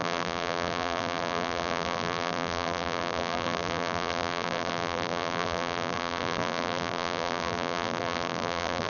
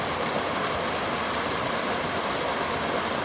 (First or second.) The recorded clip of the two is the second